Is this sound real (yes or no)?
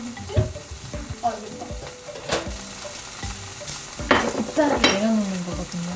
yes